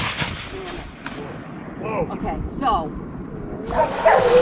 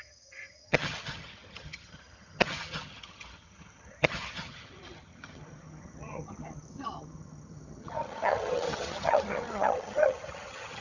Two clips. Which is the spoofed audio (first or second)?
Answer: second